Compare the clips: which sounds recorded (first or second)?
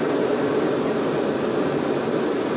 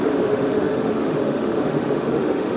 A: first